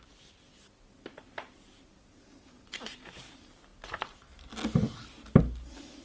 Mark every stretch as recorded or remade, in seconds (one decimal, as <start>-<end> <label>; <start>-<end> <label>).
0.0-6.0 recorded